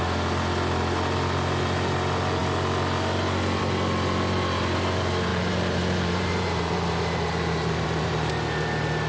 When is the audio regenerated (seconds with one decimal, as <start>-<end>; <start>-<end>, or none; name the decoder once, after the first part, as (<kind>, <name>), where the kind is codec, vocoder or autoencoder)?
5.3-8.3 (vocoder, BigVGAN v2)